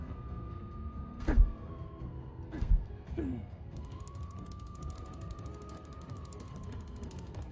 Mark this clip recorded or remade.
remade